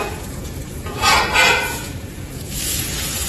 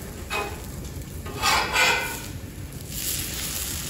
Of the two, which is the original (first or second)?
second